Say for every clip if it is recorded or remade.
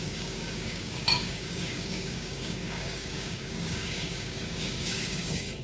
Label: remade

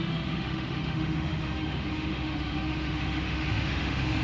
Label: remade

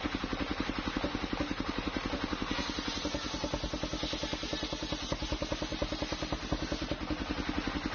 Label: recorded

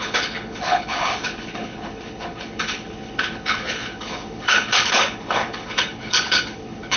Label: remade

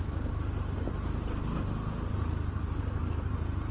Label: recorded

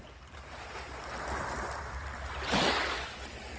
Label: recorded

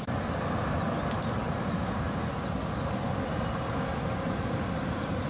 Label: recorded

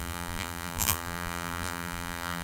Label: remade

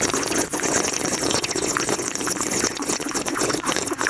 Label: remade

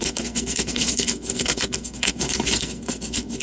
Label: remade